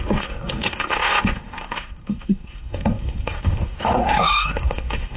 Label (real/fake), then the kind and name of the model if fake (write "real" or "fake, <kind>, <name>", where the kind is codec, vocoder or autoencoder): fake, codec, SNAC